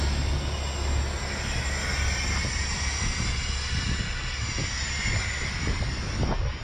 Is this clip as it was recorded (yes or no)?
yes